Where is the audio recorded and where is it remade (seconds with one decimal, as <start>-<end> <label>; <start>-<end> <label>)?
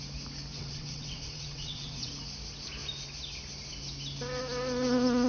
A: 0.0-0.5 recorded; 0.5-2.1 remade; 2.1-5.3 recorded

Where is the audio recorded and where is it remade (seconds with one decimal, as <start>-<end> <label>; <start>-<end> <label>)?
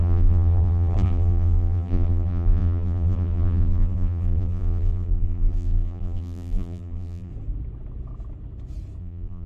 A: 0.0-7.3 remade; 7.3-9.0 recorded; 9.0-9.5 remade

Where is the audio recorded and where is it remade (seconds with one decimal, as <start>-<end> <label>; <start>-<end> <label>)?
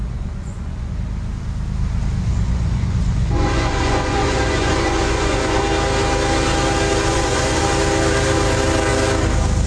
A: 0.0-0.9 remade; 0.9-2.2 recorded; 2.2-5.6 remade; 5.6-7.1 recorded; 7.1-7.6 remade; 7.6-9.7 recorded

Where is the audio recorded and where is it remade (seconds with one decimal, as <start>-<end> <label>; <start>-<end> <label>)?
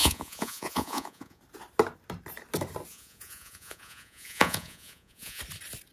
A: 0.0-1.4 remade; 1.4-2.9 recorded; 2.9-5.4 remade; 5.4-5.9 recorded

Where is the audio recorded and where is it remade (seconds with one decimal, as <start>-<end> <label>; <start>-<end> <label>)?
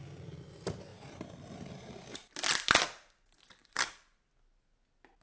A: 0.0-0.9 recorded; 0.9-2.3 remade; 2.3-3.6 recorded; 3.6-4.3 remade; 4.3-5.2 recorded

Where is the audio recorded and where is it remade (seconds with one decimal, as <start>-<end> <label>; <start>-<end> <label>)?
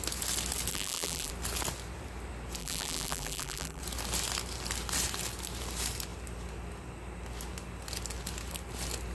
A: 0.0-0.7 recorded; 0.7-1.3 remade; 1.3-2.6 recorded; 2.6-3.8 remade; 3.8-9.1 recorded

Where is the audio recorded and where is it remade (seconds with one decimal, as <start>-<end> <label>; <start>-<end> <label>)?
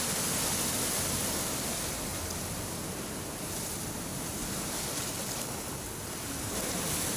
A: 0.0-7.2 recorded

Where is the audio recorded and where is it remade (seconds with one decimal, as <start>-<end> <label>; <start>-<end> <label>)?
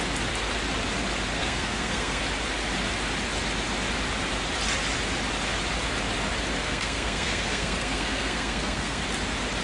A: 0.0-1.4 recorded; 1.4-2.2 remade; 2.2-6.6 recorded; 6.6-9.0 remade; 9.0-9.6 recorded